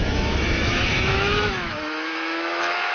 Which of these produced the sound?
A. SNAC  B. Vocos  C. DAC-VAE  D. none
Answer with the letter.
C